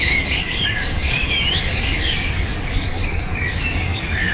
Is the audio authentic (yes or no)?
no